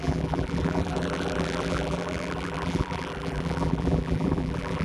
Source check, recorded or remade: remade